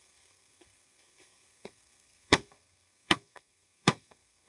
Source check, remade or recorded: remade